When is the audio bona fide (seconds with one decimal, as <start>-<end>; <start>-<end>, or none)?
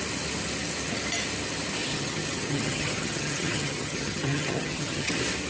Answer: 0.0-1.8; 5.1-5.5